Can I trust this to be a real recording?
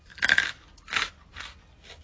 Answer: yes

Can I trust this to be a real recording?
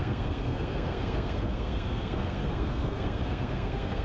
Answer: no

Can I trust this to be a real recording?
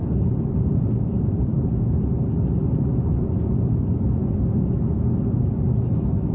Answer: yes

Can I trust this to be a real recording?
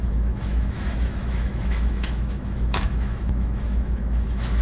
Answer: no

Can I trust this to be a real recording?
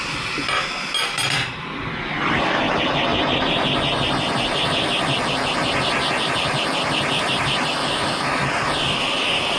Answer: yes